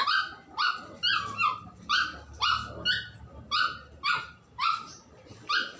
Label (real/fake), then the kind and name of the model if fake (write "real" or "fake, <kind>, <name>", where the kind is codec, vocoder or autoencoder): real